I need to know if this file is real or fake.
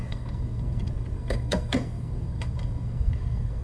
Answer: fake